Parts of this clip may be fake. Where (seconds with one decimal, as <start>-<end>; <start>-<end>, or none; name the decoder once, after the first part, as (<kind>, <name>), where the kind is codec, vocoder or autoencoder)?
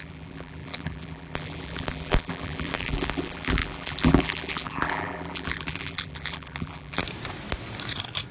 0.0-7.0 (vocoder, BigVGAN v2)